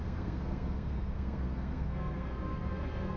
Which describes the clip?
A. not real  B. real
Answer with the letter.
A